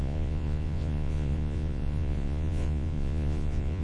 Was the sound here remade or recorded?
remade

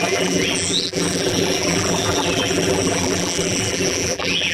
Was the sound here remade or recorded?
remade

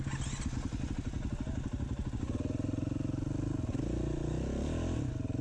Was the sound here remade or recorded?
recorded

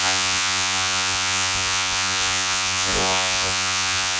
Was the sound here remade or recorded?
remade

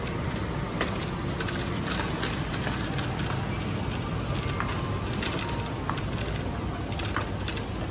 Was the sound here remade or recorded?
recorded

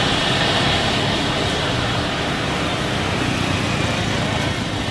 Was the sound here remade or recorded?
remade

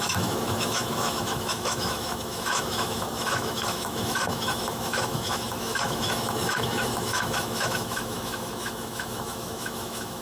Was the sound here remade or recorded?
remade